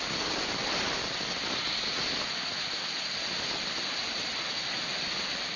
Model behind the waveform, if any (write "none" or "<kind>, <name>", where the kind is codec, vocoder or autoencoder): none